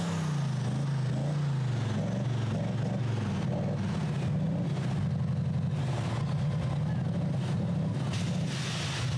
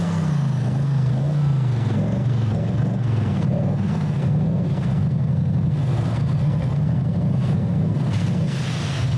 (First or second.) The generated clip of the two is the second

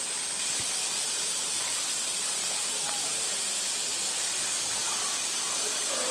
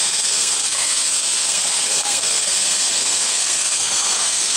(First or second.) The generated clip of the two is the second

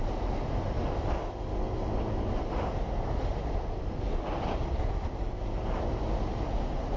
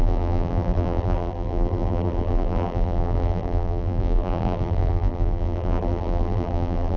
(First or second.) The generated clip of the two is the second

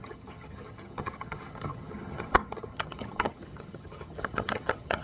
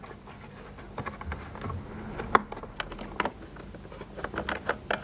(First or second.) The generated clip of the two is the first